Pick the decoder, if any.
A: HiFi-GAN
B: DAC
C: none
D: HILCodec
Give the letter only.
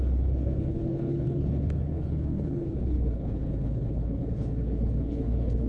D